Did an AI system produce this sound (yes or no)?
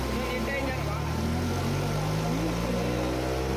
no